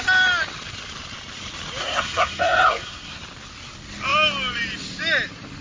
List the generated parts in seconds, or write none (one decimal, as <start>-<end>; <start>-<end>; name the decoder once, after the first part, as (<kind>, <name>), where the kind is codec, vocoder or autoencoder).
1.8-3.2 (codec, SNAC)

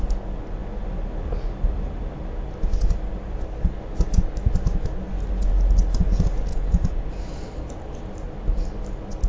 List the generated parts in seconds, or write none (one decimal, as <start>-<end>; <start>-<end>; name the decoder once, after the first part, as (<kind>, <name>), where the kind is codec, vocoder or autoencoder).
6.5-7.2 (vocoder, Vocos)